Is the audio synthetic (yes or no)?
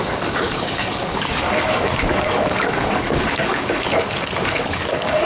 yes